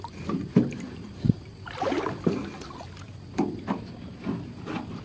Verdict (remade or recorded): remade